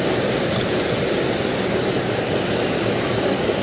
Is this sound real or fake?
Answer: real